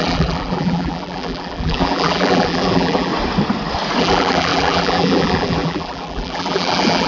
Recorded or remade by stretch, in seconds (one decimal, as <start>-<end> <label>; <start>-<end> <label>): 0.0-3.1 remade; 3.1-4.0 recorded; 4.0-7.1 remade